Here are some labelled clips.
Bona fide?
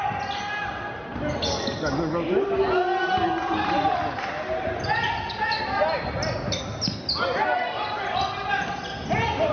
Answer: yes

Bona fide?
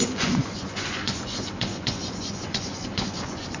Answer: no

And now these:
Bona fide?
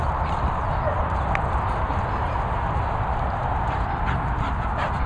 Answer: yes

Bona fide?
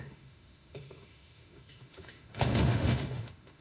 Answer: no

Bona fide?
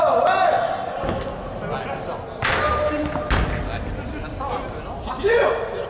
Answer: yes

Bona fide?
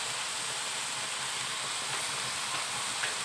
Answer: yes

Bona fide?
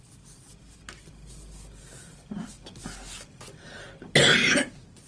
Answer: yes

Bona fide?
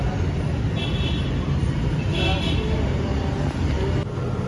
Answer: yes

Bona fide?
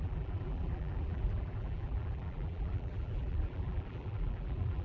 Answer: no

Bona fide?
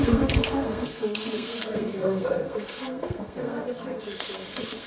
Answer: no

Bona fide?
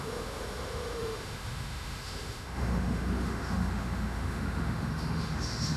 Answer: no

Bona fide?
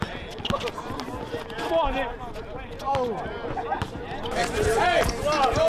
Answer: yes